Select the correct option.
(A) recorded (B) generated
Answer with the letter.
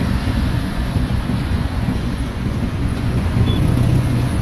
B